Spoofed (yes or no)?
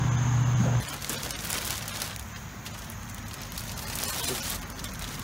no